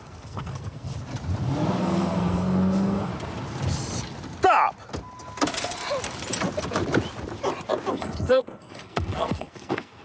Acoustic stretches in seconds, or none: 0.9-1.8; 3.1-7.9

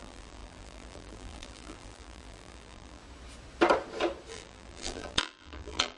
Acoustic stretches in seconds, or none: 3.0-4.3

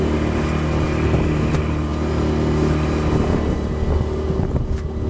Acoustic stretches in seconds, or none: 0.0-5.1